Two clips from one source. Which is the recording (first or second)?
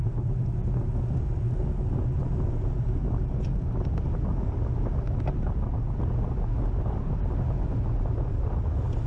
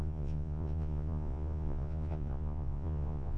first